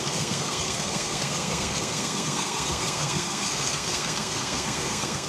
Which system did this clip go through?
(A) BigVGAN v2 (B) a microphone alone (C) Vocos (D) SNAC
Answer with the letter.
D